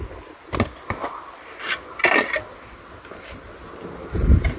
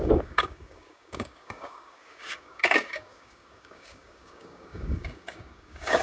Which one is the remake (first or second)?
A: second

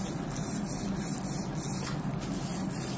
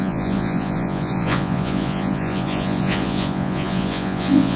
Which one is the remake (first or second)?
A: second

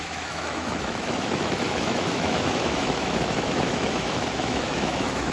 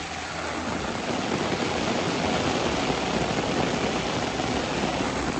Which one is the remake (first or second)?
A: first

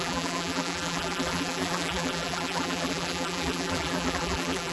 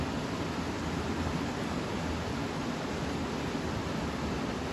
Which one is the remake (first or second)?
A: first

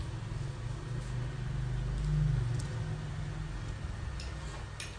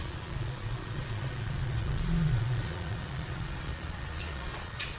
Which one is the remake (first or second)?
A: second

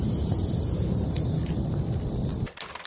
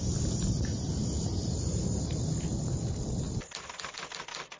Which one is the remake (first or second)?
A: first